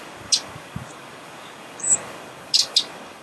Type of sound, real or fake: fake